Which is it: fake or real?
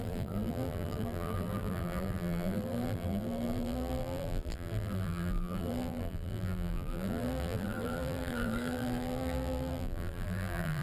fake